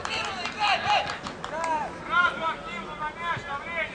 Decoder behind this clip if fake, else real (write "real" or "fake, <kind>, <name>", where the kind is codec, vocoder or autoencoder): real